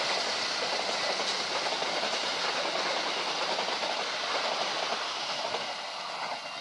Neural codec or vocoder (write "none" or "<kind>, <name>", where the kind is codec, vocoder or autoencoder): none